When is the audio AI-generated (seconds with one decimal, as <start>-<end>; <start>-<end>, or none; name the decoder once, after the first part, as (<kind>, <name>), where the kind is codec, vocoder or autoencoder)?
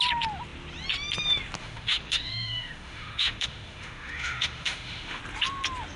1.6-5.2 (autoencoder, DAC-VAE)